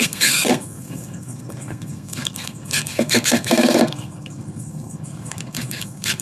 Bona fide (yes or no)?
no